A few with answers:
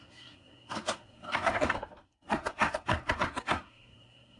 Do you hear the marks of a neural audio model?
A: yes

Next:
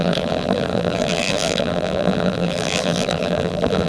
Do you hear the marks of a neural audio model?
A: yes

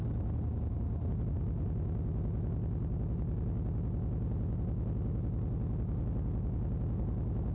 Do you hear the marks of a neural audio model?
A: no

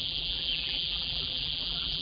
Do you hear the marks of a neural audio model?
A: yes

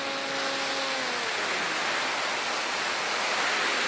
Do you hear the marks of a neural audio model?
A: no